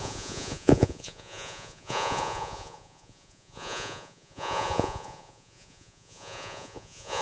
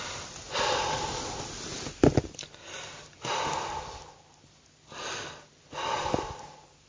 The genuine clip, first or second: second